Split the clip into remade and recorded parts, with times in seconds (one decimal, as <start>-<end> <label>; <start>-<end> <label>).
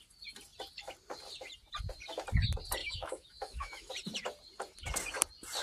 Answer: 0.0-2.8 recorded; 2.8-3.9 remade; 3.9-5.6 recorded